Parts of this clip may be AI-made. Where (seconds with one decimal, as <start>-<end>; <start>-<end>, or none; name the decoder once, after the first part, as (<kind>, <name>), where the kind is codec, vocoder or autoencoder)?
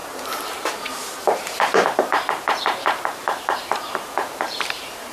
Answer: 0.0-5.1 (vocoder, BigVGAN v2)